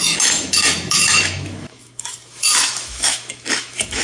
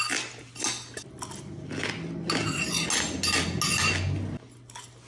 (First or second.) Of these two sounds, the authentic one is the second